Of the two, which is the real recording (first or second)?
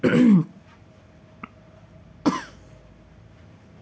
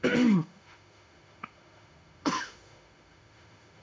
first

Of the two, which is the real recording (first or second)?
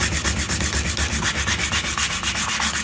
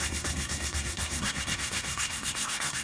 first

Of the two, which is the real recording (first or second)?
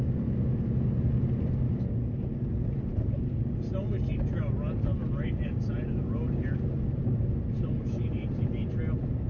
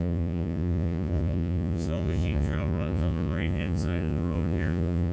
first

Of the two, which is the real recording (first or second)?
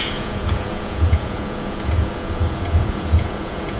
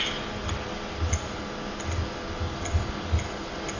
second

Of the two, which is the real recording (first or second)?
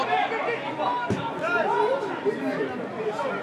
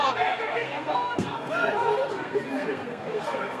first